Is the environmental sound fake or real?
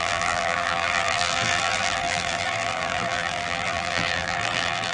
fake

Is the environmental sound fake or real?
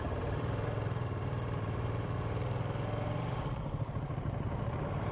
fake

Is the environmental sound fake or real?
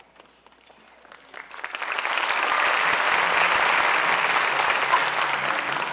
real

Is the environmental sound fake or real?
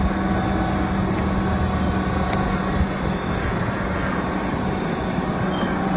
real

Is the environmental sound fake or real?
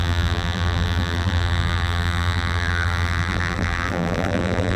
fake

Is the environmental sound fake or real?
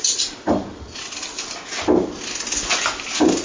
real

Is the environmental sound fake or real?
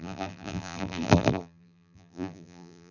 fake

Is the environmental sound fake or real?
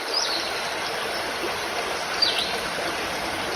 fake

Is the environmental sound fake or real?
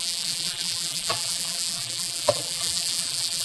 fake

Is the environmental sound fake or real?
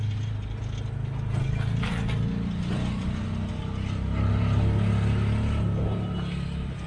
real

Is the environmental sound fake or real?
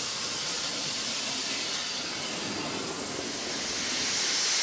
real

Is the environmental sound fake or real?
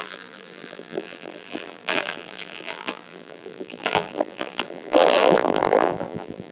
fake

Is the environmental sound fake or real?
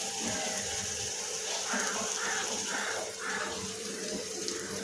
fake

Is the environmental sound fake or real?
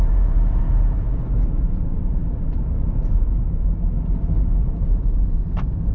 fake